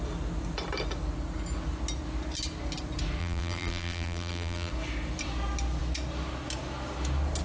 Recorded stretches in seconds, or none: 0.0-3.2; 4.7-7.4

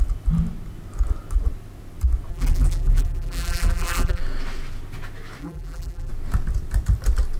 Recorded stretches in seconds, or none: 0.0-2.3; 4.2-5.4; 6.1-7.4

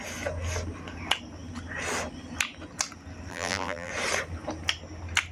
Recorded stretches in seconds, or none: 0.0-3.3; 3.9-5.3